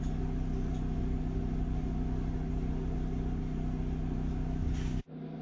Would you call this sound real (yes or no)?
yes